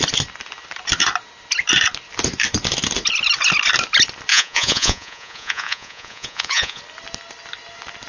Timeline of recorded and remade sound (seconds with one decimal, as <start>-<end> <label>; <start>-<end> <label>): 0.0-4.3 recorded; 4.3-6.8 remade; 6.8-8.1 recorded

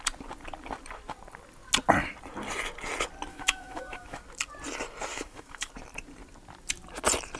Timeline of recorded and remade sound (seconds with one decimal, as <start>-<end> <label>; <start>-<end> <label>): 0.0-3.3 recorded; 3.3-4.2 remade; 4.2-5.1 recorded; 5.1-5.7 remade; 5.7-7.4 recorded

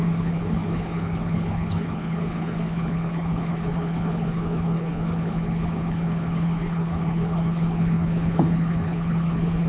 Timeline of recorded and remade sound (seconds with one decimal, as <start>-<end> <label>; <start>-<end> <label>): 0.0-9.7 remade

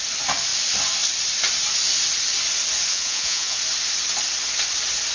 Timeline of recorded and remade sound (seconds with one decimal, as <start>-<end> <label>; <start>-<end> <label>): 0.0-2.9 recorded; 2.9-3.6 remade; 3.6-5.1 recorded

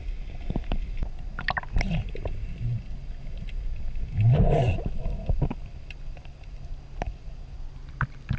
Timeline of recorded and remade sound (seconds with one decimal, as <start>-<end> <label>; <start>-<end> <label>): 0.0-8.4 recorded